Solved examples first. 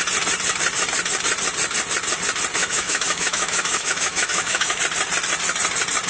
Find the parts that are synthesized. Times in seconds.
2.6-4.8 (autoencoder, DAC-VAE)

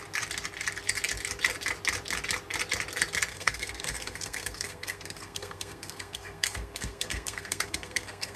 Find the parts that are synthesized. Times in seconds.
3.3-8.4 (codec, SNAC)

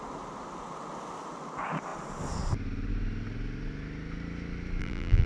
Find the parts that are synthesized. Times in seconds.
4.8-5.3 (vocoder, BigVGAN v2)

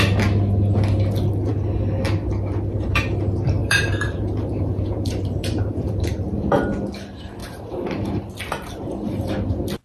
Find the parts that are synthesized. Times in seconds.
3.6-6.1 (vocoder, BigVGAN v2); 7.4-9.4

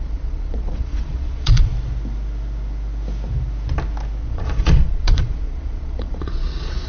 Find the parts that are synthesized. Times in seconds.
0.0-1.7 (vocoder, Vocos); 4.2-6.9

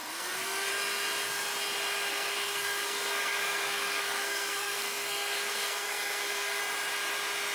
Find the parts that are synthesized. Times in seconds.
0.0-0.7 (codec, SNAC); 2.1-6.6

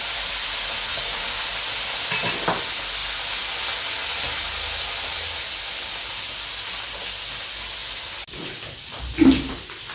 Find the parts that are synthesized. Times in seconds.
0.9-1.4 (codec, DAC)